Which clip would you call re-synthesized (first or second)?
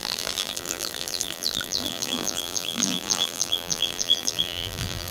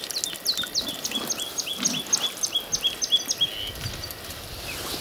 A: first